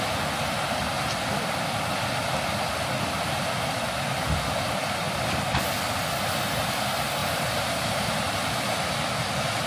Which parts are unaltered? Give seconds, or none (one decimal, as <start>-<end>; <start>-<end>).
0.0-7.2; 8.0-9.7